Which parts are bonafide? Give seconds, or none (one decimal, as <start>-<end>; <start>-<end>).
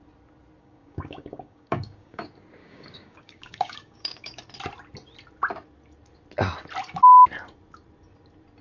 0.0-0.6; 2.2-2.6; 4.4-8.6